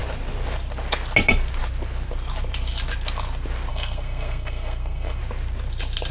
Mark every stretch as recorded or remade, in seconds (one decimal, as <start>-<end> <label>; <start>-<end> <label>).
0.0-3.7 recorded; 3.7-5.2 remade; 5.2-6.1 recorded